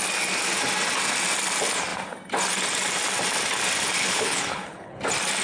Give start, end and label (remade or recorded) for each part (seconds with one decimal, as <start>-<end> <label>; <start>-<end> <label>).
0.0-4.0 recorded; 4.0-5.0 remade; 5.0-5.4 recorded